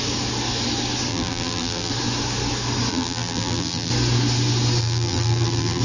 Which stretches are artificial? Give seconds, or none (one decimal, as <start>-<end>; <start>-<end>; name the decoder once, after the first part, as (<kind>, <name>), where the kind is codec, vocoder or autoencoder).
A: 1.1-1.9 (vocoder, BigVGAN v2); 2.9-3.9; 4.8-5.8